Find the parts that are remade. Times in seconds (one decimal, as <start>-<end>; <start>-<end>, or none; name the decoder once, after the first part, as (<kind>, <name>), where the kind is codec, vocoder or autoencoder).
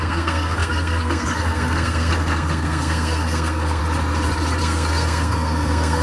0.0-3.8 (codec, SNAC); 4.6-6.0